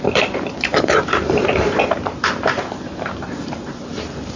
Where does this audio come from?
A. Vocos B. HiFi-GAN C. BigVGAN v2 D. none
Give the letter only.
C